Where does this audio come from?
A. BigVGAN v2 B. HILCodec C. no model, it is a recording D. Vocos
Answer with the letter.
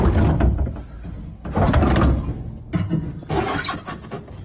C